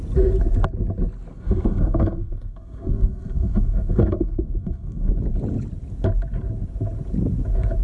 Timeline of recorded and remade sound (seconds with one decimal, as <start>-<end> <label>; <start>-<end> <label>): 0.0-1.3 recorded; 1.3-5.1 remade; 5.1-7.8 recorded